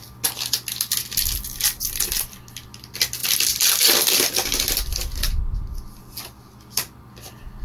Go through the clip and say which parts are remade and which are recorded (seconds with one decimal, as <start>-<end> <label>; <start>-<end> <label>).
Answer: 0.0-3.2 recorded; 3.2-5.4 remade; 5.4-7.6 recorded